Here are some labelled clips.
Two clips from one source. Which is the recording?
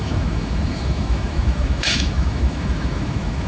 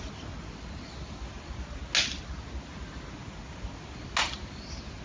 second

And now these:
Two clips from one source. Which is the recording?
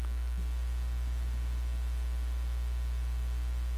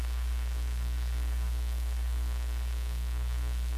first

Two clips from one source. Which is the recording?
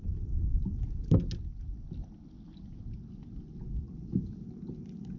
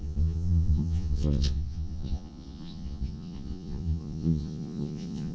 first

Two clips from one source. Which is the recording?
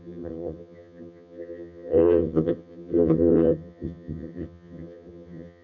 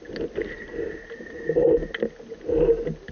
second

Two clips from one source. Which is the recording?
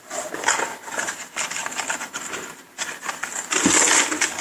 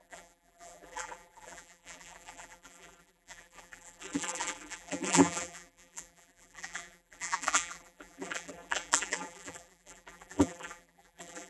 first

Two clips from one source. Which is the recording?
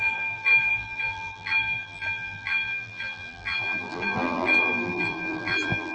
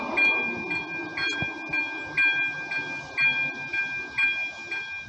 second